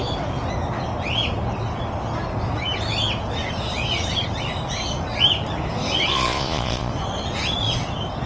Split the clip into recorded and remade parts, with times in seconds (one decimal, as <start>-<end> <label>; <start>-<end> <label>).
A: 0.0-6.1 recorded; 6.1-6.9 remade; 6.9-8.3 recorded